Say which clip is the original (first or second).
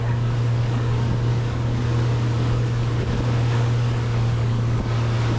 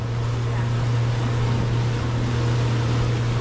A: second